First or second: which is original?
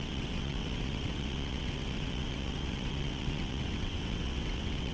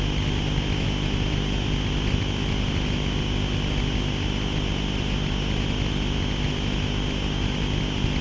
second